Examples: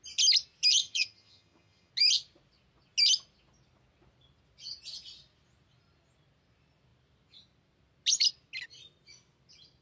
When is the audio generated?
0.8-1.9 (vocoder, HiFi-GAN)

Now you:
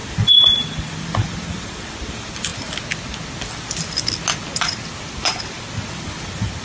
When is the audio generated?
0.0-2.5 (vocoder, BigVGAN v2); 5.9-6.6

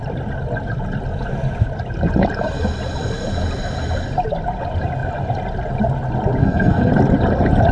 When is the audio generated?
6.4-6.9 (codec, SNAC)